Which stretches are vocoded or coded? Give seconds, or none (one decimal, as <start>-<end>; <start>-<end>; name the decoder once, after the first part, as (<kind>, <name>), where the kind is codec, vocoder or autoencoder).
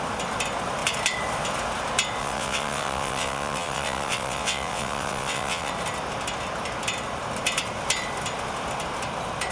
2.2-5.7 (vocoder, WaveNeXt)